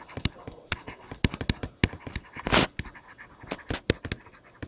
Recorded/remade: recorded